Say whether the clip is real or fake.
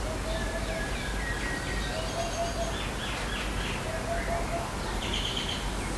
real